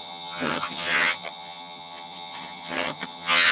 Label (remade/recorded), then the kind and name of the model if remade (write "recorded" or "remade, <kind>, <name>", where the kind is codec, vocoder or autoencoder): remade, vocoder, HiFi-GAN